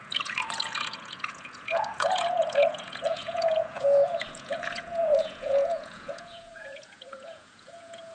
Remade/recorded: remade